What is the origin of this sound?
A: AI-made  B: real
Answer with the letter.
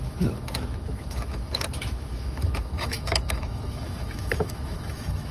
A